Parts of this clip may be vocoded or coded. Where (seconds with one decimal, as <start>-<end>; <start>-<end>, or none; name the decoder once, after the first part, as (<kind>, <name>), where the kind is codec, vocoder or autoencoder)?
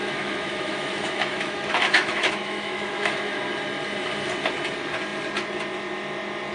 0.0-3.4 (autoencoder, DAC-VAE)